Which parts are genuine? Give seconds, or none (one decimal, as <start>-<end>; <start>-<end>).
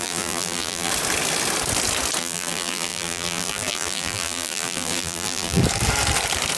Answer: 0.9-2.2; 5.6-6.6